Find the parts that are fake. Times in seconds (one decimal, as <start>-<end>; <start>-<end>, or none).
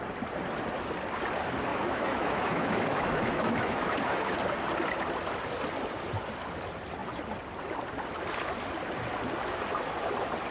1.7-4.4